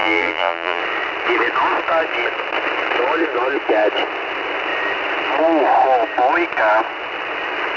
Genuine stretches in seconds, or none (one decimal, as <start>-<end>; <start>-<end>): 0.8-7.8